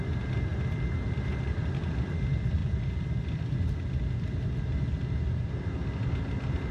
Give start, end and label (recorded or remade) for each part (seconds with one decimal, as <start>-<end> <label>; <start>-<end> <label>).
0.0-2.6 recorded; 2.6-4.3 remade; 4.3-6.7 recorded